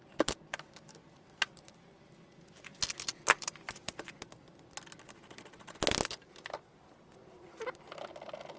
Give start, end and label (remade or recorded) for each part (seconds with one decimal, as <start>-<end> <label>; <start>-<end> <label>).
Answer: 0.0-8.6 recorded